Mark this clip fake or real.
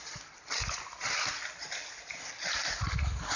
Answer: real